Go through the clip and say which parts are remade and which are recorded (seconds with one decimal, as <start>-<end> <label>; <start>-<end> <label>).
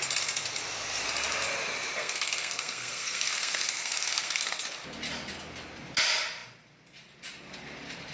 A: 0.0-2.0 recorded; 2.0-4.6 remade; 4.6-8.1 recorded